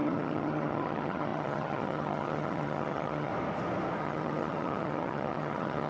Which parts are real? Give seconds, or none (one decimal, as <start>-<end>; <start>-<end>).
3.3-4.0